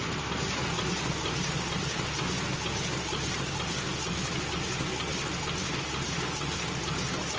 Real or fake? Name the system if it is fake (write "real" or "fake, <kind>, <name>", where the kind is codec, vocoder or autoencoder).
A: real